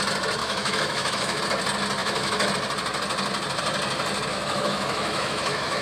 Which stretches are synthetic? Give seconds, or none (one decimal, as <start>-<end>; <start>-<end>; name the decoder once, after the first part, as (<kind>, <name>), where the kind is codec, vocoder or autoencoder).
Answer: 0.4-1.4 (autoencoder, DAC-VAE); 2.0-2.5; 4.3-5.8